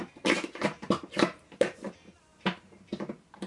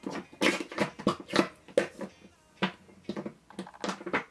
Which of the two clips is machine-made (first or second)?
first